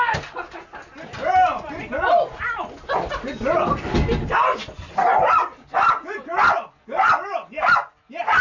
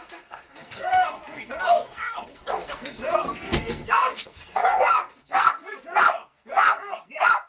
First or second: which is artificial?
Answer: second